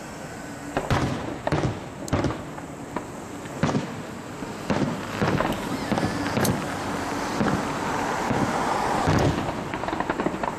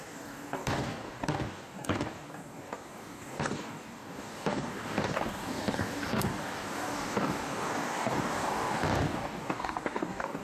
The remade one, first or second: second